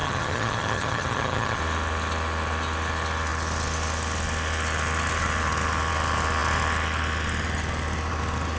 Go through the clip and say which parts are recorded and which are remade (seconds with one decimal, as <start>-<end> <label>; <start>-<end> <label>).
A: 0.0-1.6 remade; 1.6-8.6 recorded